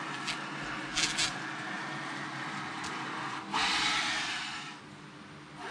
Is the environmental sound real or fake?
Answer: real